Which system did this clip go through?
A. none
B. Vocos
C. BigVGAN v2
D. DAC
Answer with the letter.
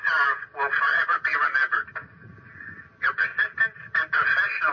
A